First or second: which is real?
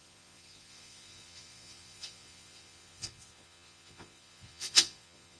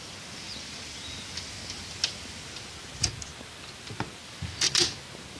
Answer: second